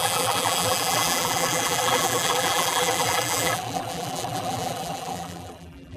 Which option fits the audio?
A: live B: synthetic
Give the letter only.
B